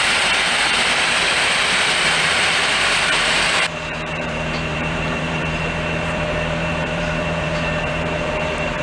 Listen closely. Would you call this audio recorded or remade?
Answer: remade